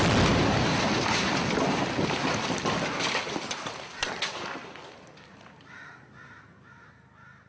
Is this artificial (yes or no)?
no